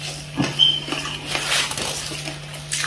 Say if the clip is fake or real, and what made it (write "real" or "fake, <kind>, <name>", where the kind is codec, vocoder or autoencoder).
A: real